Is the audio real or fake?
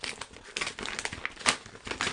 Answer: real